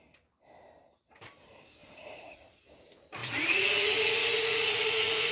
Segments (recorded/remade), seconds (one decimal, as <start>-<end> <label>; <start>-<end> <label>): 0.0-1.8 recorded; 1.8-2.4 remade; 2.4-3.2 recorded; 3.2-5.3 remade